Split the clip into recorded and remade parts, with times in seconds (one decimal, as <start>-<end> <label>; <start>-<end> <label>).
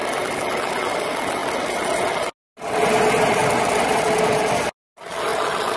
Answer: 0.0-5.8 recorded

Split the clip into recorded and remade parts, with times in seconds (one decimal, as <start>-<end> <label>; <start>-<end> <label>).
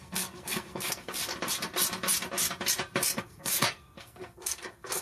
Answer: 0.0-1.3 remade; 1.3-3.2 recorded; 3.2-5.0 remade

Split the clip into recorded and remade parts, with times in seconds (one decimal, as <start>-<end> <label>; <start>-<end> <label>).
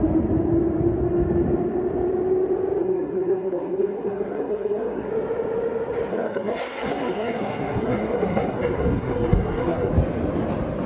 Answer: 0.0-2.8 recorded; 2.8-5.1 remade; 5.1-6.1 recorded; 6.1-9.9 remade; 9.9-10.9 recorded